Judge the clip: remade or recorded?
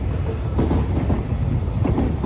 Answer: recorded